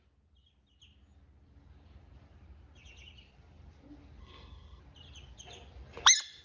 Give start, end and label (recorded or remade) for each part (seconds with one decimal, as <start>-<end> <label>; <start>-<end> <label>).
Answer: 0.0-4.2 recorded; 4.2-4.8 remade; 4.8-6.4 recorded